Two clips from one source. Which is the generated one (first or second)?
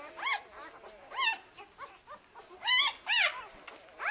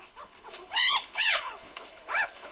second